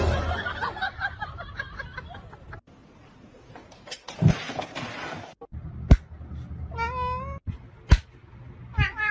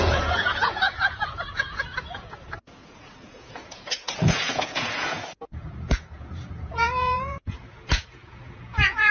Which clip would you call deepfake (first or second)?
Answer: second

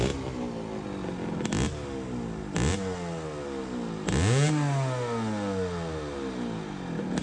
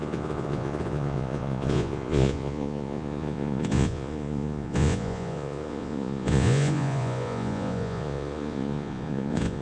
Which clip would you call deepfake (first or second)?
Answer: second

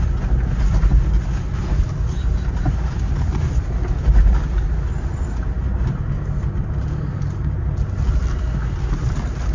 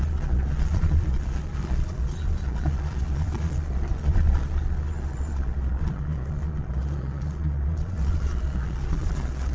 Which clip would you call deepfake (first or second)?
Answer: second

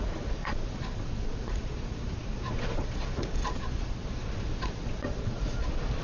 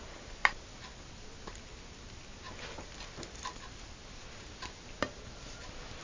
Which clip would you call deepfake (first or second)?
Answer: first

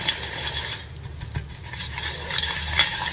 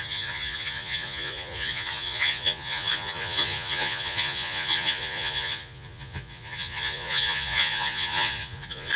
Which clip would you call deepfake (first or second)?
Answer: second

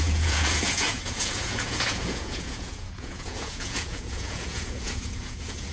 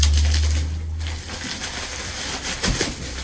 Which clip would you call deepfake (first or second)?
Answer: first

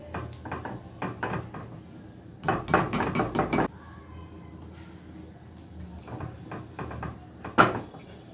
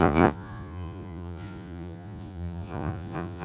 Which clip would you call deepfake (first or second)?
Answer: second